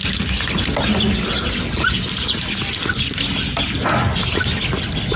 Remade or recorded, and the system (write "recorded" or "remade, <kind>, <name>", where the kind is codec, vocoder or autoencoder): recorded